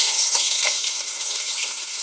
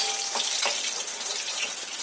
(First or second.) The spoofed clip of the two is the first